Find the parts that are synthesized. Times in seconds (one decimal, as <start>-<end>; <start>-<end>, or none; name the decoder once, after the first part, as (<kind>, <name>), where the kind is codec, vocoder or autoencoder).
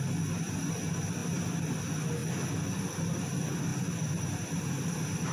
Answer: none